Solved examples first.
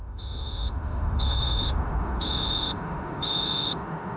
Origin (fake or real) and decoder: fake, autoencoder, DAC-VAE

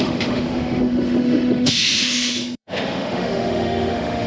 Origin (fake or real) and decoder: fake, autoencoder, DAC-VAE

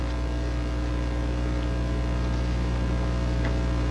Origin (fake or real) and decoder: real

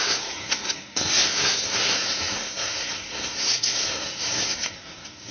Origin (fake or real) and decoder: fake, codec, SNAC